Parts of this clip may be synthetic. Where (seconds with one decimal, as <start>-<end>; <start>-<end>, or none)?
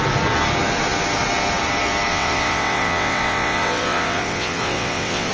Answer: 2.1-5.3